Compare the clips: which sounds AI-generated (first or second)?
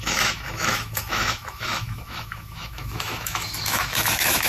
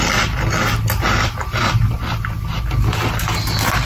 first